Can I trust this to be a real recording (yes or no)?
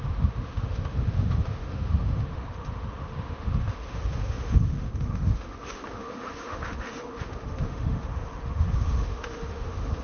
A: no